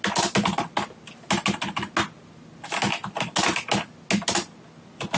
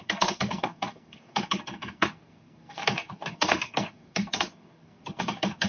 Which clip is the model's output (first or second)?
second